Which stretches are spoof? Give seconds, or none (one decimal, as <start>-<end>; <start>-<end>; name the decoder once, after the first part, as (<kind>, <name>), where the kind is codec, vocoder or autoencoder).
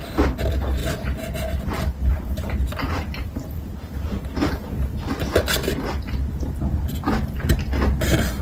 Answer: 2.1-4.5 (vocoder, BigVGAN v2)